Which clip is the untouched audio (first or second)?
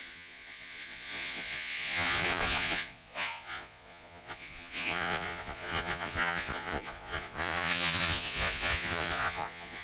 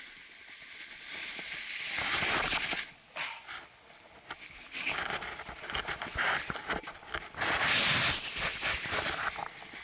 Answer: second